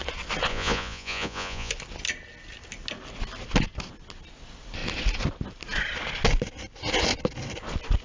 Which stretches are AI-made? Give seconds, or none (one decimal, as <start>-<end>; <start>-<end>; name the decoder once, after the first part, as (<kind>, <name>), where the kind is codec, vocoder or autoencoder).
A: 0.5-1.7 (vocoder, Vocos)